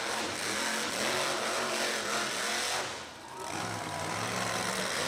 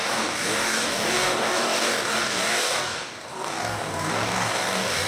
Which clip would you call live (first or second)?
first